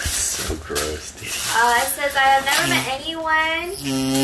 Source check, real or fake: real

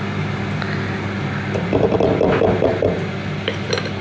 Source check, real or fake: real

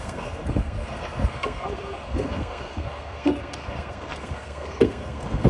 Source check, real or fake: fake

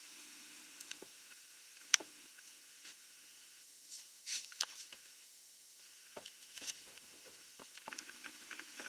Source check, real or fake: fake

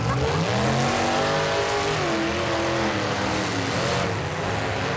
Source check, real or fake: real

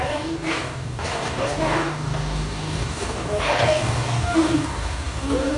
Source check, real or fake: fake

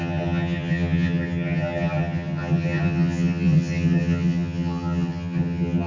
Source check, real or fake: fake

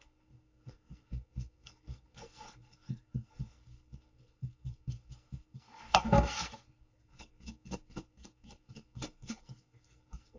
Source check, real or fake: fake